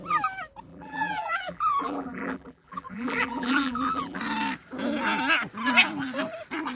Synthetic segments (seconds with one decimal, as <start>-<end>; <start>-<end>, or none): 0.7-4.2